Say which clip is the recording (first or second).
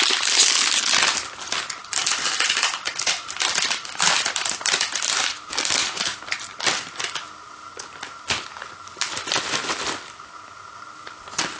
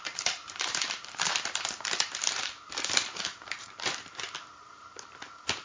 first